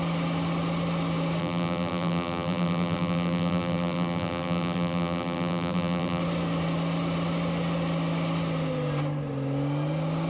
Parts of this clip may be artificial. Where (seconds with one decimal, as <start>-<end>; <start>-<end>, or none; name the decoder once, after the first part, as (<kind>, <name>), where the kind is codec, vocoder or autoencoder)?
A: 1.4-6.2 (vocoder, BigVGAN v2)